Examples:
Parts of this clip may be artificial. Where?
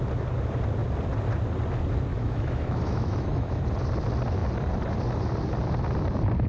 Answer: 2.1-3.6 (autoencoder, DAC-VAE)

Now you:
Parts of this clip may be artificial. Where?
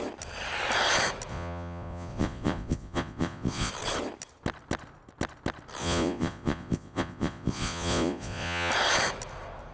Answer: 1.3-3.7 (vocoder, Vocos); 5.8-8.7